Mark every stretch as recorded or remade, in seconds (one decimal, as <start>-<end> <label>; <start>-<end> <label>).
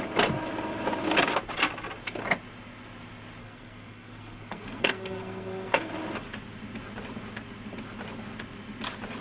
0.0-3.4 recorded; 3.4-5.9 remade; 5.9-9.2 recorded